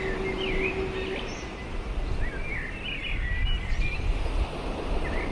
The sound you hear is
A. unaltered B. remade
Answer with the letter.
A